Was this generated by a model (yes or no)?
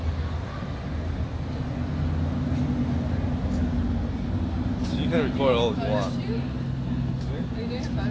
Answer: no